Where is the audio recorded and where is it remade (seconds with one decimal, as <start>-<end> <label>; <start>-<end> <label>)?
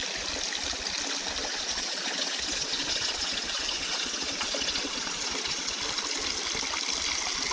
0.0-1.4 recorded; 1.4-5.8 remade; 5.8-7.5 recorded